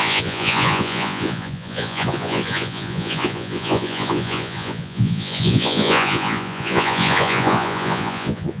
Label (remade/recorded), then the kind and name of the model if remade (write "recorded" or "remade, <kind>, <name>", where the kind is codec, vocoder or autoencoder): remade, vocoder, Vocos